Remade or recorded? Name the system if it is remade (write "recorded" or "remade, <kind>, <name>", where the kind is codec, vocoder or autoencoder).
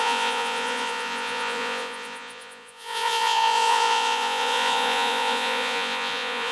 remade, vocoder, Vocos